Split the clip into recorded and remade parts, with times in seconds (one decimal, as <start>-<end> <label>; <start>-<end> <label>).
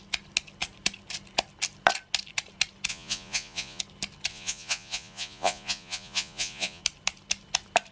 0.0-2.9 recorded; 2.9-3.8 remade; 3.8-4.3 recorded; 4.3-6.8 remade; 6.8-7.9 recorded